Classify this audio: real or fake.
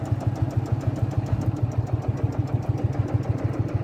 real